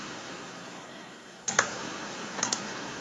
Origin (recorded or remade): remade